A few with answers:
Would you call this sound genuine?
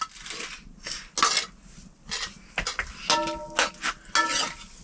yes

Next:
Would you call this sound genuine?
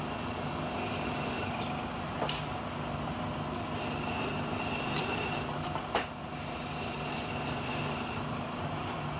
yes